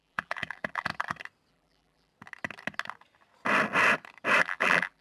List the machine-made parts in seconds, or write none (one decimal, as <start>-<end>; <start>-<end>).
0.0-0.9; 1.5-2.1; 4.4-5.0